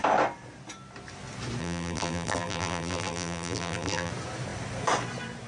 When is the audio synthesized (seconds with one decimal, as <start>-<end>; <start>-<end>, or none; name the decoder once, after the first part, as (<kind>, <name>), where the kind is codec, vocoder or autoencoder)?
1.6-4.1 (vocoder, BigVGAN v2)